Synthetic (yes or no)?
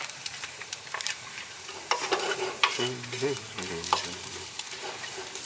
yes